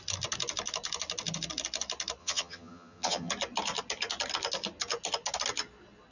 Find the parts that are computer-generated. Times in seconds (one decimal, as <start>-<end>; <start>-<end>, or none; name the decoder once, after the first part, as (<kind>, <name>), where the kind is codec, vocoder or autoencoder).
2.2-3.3 (vocoder, HiFi-GAN)

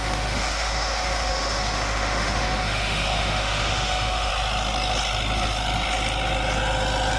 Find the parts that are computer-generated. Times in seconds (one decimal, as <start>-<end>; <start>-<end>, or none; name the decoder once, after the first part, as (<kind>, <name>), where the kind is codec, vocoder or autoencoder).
0.0-4.3 (autoencoder, DAC-VAE)

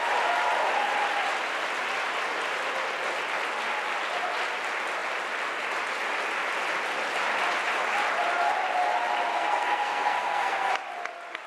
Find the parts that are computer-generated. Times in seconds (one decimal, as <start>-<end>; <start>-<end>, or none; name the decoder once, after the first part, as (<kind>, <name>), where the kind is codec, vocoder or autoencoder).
9.3-10.7 (codec, SNAC)